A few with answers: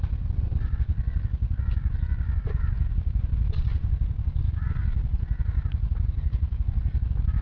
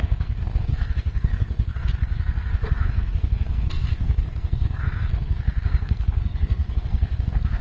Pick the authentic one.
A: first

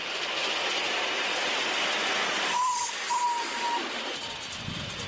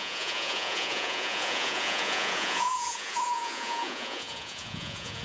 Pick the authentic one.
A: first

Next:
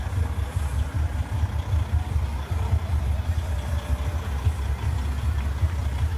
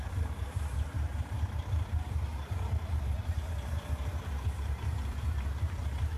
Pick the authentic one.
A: first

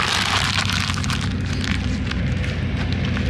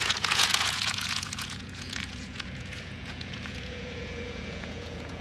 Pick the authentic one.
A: first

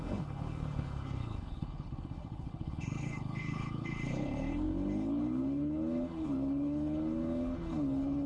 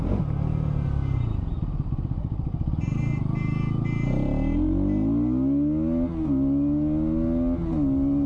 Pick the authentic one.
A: second